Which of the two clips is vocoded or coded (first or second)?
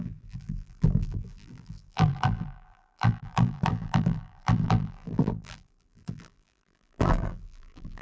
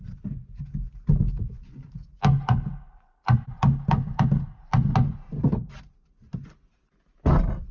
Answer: first